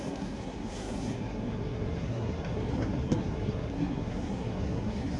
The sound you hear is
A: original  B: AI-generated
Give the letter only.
B